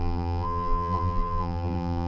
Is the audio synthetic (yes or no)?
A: yes